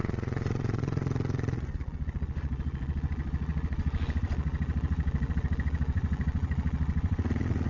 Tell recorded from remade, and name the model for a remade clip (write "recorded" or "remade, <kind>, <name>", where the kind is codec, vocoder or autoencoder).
remade, vocoder, Vocos